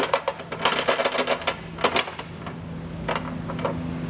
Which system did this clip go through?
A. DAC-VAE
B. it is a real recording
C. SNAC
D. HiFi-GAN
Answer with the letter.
B